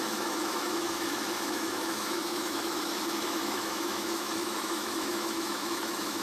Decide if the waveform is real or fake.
fake